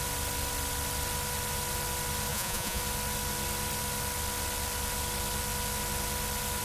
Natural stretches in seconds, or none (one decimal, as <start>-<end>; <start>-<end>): 0.0-2.3; 2.8-6.6